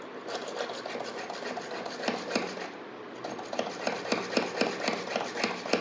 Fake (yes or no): no